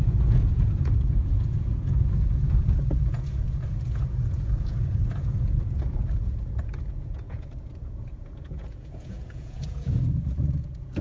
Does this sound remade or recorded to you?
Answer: remade